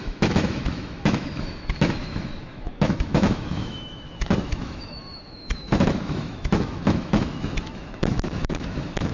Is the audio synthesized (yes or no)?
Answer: yes